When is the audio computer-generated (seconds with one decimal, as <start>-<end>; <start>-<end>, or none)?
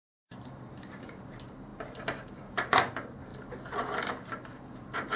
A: 0.0-3.3; 4.0-5.2